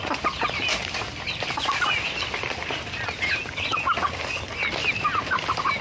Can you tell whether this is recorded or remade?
recorded